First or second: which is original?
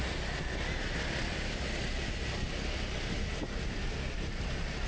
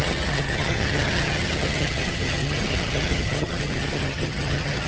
first